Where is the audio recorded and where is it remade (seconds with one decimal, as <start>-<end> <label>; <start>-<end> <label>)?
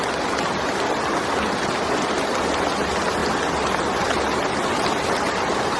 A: 0.0-5.8 recorded